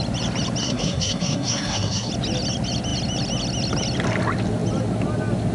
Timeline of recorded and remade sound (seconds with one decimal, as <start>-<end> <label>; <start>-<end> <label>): 0.0-0.6 recorded; 0.6-2.1 remade; 2.1-5.5 recorded